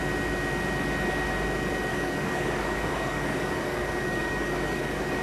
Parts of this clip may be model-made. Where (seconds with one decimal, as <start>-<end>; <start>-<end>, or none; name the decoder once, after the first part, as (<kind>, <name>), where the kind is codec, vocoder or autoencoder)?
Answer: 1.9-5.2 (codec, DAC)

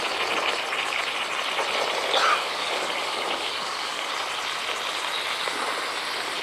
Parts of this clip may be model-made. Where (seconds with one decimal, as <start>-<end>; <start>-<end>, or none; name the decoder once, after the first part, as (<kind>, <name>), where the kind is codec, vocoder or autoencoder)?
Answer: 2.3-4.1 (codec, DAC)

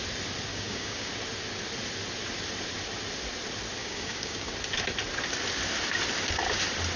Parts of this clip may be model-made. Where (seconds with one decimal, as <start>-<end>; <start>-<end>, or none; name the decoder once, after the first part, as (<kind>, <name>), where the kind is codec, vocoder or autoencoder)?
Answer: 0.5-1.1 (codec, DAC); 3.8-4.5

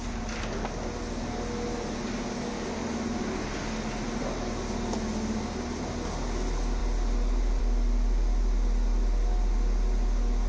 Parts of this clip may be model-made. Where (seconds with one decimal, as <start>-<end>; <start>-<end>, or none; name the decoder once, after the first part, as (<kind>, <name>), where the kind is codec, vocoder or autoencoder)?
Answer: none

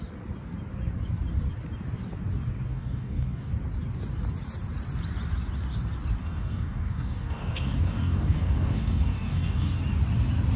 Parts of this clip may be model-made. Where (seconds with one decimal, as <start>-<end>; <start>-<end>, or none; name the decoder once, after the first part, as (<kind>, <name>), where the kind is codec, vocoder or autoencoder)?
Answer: 2.7-3.5 (codec, DAC); 6.2-9.8